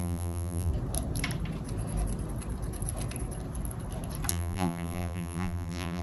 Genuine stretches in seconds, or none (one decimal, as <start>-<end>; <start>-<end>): 0.7-4.3